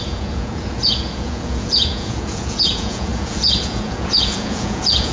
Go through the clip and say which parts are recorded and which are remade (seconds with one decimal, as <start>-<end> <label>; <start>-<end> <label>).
0.0-5.1 remade